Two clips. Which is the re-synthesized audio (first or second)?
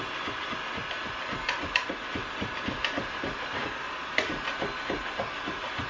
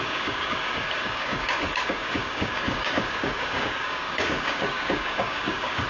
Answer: second